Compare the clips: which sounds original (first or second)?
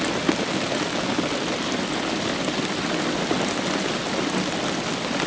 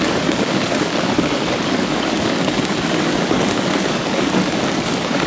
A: first